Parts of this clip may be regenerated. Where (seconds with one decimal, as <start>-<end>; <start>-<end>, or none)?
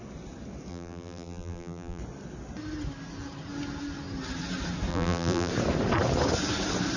0.7-2.0; 4.9-5.5